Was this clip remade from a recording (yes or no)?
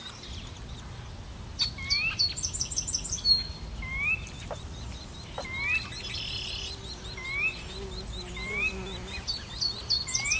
no